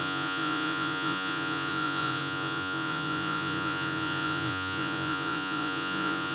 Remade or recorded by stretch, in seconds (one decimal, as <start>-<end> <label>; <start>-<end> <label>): 0.0-6.3 remade